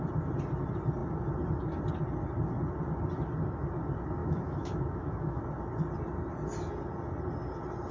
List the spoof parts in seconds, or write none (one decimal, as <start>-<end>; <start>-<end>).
4.2-5.4